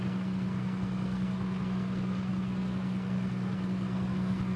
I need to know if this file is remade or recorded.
remade